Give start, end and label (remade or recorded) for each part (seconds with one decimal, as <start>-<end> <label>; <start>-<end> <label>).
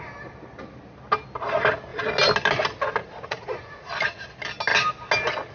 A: 0.0-3.0 recorded; 3.0-3.9 remade; 3.9-5.5 recorded